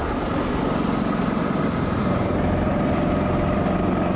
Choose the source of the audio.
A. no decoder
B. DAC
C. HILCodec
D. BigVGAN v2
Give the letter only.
A